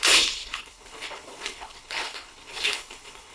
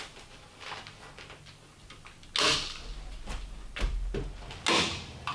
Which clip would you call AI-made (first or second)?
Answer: first